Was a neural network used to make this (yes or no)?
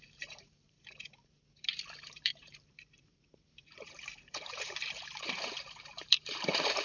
yes